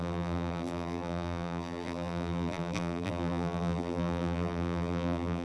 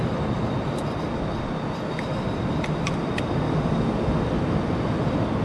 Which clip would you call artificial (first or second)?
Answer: first